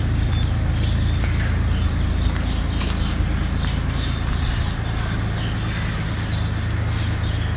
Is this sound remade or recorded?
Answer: recorded